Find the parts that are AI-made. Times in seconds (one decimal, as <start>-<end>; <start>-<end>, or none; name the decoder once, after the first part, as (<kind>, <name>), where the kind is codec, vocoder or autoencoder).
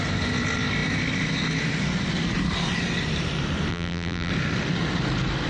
3.7-4.3 (vocoder, BigVGAN v2)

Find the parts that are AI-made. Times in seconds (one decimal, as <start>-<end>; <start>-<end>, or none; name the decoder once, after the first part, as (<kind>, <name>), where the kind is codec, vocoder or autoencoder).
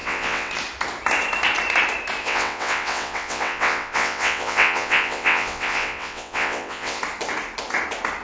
0.0-0.5 (vocoder, WaveNeXt); 2.2-7.0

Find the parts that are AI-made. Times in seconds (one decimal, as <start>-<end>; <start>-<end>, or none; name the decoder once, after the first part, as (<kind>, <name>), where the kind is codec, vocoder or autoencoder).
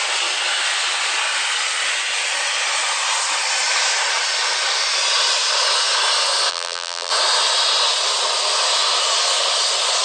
6.5-7.1 (vocoder, BigVGAN v2)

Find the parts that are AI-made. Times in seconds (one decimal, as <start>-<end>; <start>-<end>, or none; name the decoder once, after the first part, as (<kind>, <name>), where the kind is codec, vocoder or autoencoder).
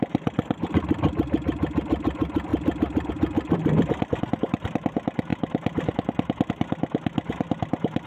none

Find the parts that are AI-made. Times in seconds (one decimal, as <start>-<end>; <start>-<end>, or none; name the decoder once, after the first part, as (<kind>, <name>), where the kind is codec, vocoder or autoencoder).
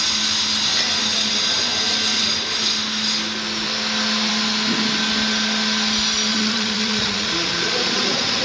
6.3-8.4 (vocoder, Vocos)